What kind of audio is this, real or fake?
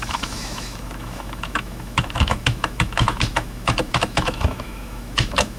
fake